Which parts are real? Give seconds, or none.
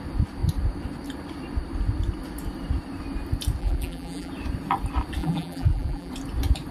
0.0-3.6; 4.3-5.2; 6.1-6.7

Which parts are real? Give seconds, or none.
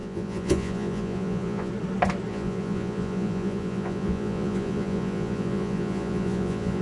1.7-2.3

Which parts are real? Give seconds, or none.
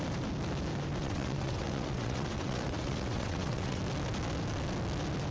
0.0-1.0; 3.8-5.3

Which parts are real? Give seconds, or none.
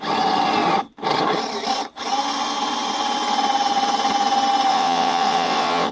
0.0-4.7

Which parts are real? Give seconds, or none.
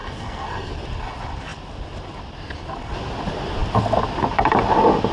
0.7-5.1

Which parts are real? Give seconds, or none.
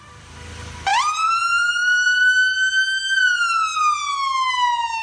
0.0-0.9; 2.2-5.0